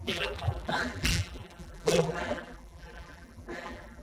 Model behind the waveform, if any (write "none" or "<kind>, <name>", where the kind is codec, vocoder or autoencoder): vocoder, BigVGAN v2